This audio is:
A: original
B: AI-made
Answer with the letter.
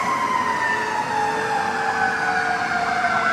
A